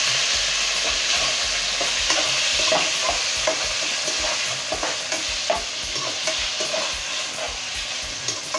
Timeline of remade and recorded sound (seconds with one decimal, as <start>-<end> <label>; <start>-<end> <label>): 0.0-8.6 recorded